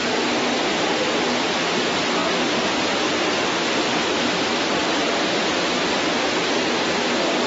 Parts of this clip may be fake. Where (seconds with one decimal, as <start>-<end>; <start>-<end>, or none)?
none